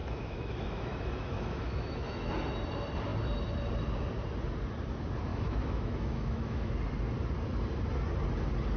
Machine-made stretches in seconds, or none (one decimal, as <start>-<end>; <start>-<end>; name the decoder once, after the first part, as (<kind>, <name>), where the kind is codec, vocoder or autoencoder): 0.0-2.3 (autoencoder, DAC-VAE); 5.3-6.7